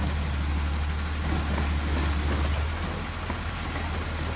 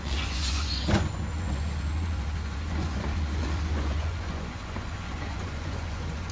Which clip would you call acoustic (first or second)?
first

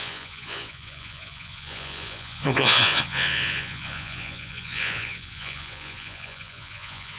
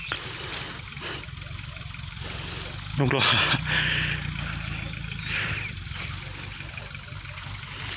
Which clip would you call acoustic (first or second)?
second